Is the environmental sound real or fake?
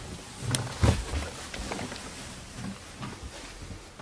real